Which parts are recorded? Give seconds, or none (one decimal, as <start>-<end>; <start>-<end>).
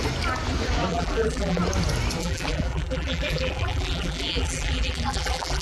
0.0-0.9; 1.6-2.2